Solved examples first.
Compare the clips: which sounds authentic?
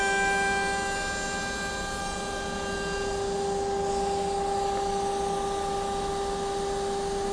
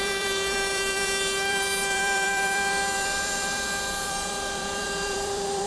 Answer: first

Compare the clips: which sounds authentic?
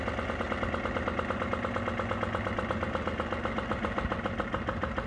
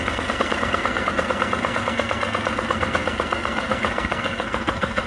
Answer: first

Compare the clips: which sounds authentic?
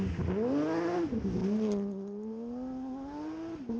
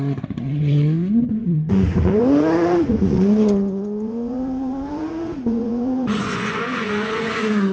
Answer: first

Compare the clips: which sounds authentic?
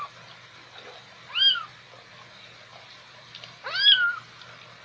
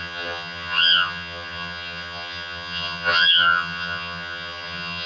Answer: first